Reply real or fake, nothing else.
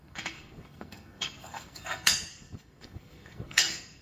fake